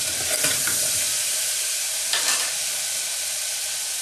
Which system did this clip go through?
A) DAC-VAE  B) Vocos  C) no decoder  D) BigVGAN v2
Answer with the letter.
C